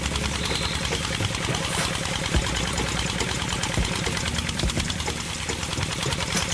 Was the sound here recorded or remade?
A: remade